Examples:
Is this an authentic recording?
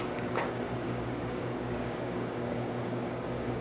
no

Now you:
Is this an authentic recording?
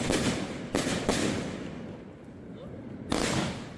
yes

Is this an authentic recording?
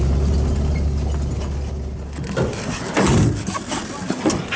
yes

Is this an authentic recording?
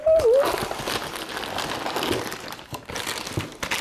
yes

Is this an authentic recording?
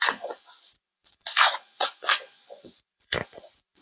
no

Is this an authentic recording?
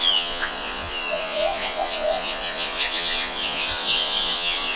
no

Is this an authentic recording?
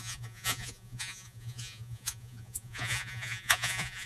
no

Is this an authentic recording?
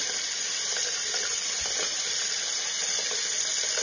yes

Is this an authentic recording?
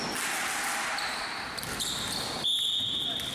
yes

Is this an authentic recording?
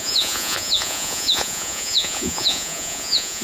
no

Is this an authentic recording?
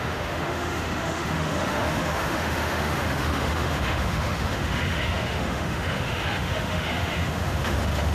no